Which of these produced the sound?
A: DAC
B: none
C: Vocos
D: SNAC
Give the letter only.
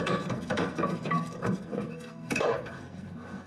D